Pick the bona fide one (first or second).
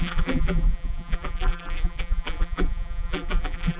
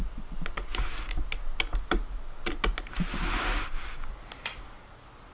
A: second